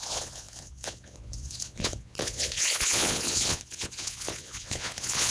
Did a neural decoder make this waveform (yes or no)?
yes